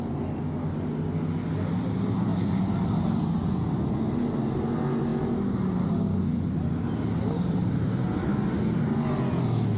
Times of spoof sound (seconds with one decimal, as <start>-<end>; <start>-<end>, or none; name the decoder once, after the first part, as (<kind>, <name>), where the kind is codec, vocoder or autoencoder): none